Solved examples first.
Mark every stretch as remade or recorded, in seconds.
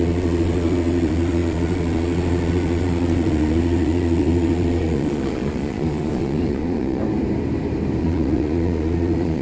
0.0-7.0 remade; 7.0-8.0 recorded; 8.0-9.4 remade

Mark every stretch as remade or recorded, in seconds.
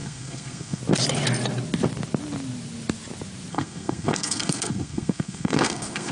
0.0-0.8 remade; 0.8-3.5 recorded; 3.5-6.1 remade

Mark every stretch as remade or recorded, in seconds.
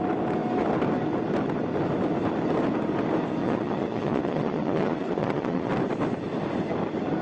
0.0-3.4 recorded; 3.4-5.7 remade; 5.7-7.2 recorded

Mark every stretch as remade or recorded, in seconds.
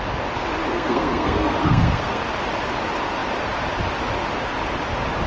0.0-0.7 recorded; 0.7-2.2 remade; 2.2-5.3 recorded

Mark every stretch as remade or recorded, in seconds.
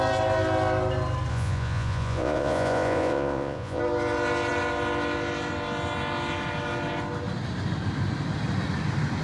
0.0-1.3 recorded; 1.3-3.8 remade; 3.8-9.2 recorded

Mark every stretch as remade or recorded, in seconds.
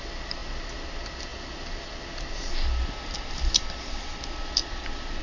0.0-5.2 recorded